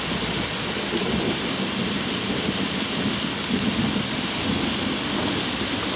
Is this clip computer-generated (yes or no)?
no